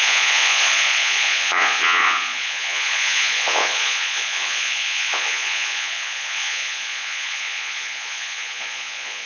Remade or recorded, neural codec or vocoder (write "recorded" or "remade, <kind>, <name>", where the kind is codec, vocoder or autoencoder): remade, vocoder, Vocos